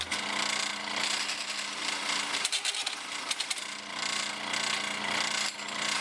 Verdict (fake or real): real